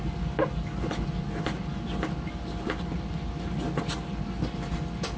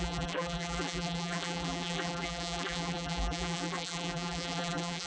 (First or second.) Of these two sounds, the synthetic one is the second